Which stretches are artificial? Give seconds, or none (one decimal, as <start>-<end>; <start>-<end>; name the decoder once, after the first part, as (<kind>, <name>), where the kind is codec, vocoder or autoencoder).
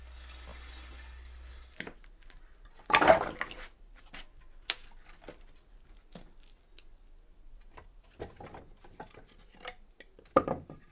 none